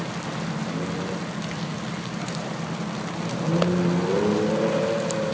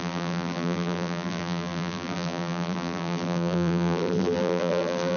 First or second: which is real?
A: first